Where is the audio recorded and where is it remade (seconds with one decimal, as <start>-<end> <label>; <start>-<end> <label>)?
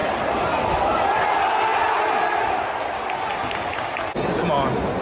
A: 0.0-5.0 recorded